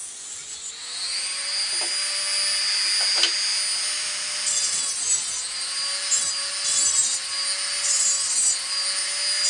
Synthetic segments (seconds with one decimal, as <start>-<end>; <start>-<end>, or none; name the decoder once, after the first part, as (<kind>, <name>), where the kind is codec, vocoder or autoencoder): 0.0-0.7 (vocoder, Vocos)